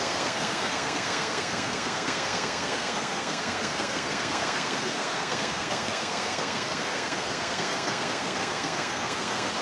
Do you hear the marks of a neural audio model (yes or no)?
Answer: yes